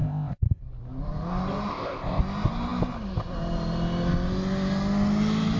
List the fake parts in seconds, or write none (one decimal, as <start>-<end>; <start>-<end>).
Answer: 0.0-0.6; 1.7-2.2